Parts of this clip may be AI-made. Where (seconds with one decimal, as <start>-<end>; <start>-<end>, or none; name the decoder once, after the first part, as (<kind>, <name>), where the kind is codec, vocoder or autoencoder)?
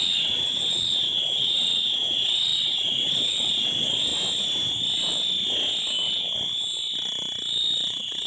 0.0-4.1 (vocoder, WaveNeXt); 7.9-8.3